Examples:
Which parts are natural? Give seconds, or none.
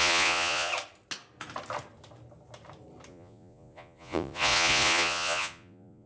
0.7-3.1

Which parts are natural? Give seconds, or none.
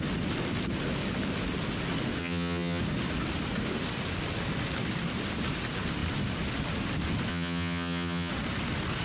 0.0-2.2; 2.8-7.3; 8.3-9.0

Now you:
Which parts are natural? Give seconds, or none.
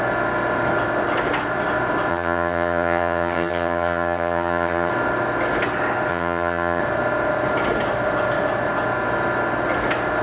0.0-2.1; 4.9-6.1; 6.8-10.2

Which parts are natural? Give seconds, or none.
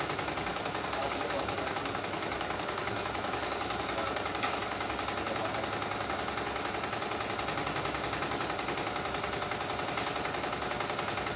0.0-0.5; 4.6-11.4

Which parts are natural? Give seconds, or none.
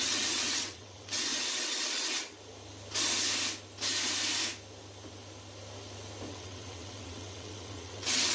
1.3-6.3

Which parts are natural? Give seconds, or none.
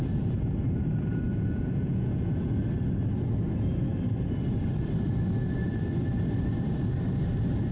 0.0-1.3; 2.6-7.7